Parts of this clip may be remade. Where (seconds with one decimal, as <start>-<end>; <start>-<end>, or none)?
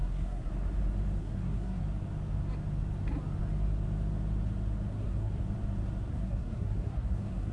0.0-0.5; 1.2-1.8; 4.9-5.4; 6.1-7.5